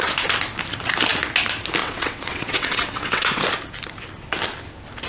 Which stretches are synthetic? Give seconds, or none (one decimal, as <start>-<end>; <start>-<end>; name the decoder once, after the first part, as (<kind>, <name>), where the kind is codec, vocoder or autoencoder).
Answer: 1.8-3.4 (vocoder, WaveNeXt)